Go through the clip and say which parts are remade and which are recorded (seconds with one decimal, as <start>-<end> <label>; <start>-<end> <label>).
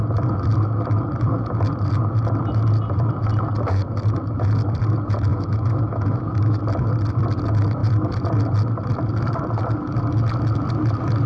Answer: 0.0-5.3 recorded; 5.3-6.6 remade; 6.6-11.3 recorded